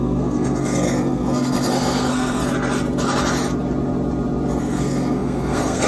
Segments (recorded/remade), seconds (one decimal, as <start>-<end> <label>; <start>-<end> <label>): 0.0-2.4 remade; 2.4-4.6 recorded; 4.6-5.9 remade